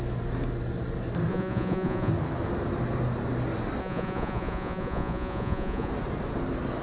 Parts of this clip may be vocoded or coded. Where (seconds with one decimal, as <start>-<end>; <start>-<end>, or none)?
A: 1.3-2.1; 3.8-5.9